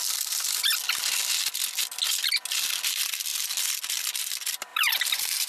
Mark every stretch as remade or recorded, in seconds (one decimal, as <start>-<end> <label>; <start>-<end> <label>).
0.0-4.7 recorded; 4.7-5.5 remade